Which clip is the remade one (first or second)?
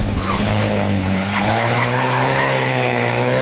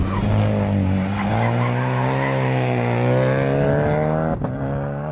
first